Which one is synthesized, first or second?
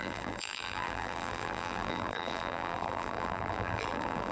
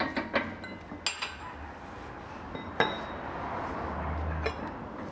first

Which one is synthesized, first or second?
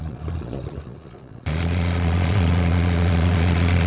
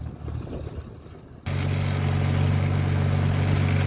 first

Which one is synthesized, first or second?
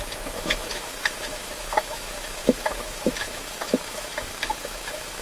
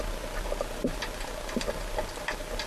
first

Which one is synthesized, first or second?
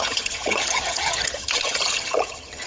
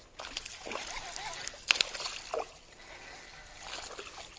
first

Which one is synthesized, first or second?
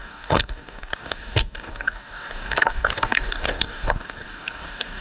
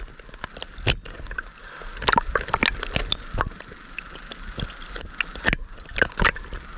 first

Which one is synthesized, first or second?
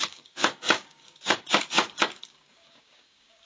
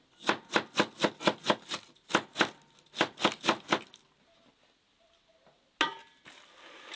first